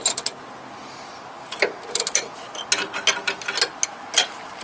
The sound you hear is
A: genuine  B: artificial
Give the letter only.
A